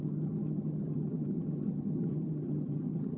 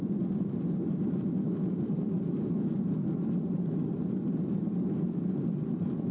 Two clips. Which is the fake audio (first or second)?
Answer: first